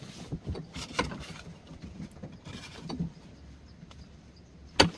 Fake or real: real